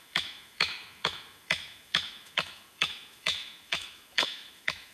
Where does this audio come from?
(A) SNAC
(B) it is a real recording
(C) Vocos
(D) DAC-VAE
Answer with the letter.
D